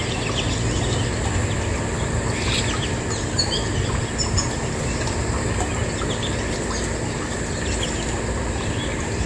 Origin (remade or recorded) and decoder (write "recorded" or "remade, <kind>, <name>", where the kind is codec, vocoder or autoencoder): recorded